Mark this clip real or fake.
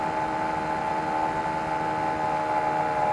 real